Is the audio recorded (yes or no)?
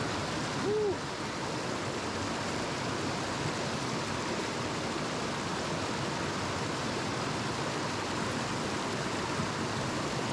yes